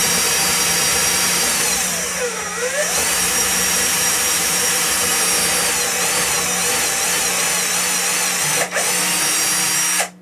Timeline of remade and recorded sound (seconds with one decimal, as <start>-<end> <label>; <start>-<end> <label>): 0.0-5.1 remade; 5.1-6.6 recorded; 6.6-7.3 remade; 7.3-10.2 recorded